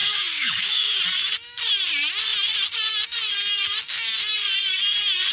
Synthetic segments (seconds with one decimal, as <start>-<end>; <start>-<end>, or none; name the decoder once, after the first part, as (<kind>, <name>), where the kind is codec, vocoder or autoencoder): 0.0-1.0 (codec, DAC)